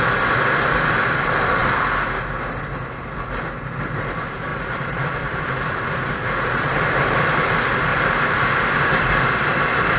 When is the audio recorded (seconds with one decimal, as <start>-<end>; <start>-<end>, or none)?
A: 0.0-4.5; 7.1-7.9; 8.7-10.0